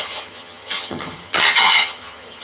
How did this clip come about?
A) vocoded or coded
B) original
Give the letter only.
A